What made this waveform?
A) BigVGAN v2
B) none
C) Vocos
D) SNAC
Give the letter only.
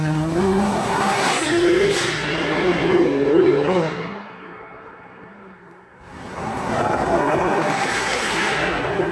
D